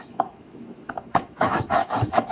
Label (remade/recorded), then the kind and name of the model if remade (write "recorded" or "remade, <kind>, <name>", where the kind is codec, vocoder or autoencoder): remade, autoencoder, DAC-VAE